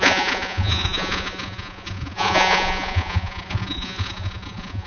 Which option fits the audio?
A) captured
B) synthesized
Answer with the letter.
B